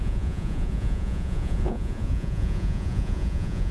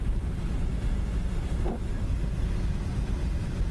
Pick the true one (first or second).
second